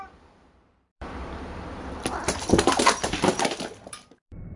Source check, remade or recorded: remade